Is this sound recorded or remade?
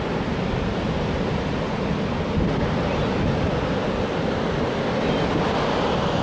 recorded